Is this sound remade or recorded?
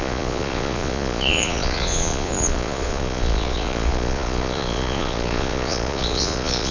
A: remade